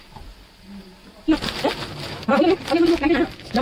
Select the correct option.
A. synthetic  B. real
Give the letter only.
B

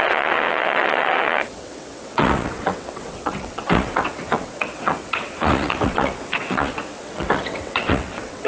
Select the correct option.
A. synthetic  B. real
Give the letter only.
A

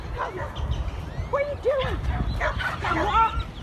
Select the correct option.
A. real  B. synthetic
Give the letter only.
A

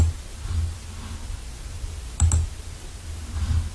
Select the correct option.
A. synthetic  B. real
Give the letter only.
B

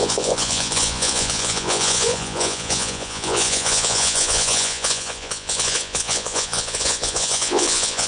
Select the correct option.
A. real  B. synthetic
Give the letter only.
B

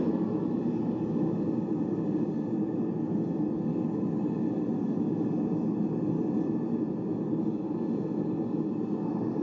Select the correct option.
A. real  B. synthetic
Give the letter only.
A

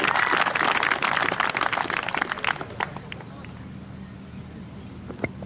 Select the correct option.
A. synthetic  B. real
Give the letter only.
B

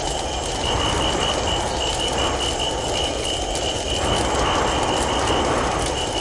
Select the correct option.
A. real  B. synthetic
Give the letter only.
A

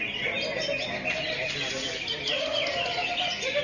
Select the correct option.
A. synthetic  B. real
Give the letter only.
B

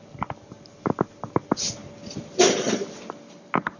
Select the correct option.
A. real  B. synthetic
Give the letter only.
A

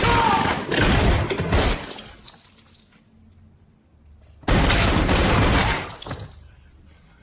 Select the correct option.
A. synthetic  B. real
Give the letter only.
B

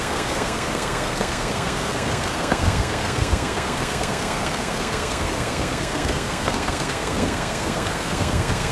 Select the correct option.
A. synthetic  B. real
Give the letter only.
A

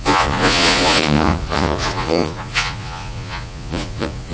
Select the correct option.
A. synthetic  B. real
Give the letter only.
A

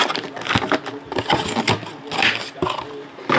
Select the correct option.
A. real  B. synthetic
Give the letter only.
A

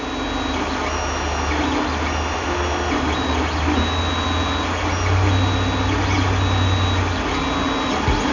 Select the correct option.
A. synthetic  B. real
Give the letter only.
B